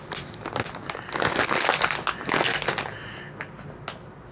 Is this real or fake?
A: real